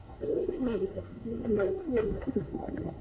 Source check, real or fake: fake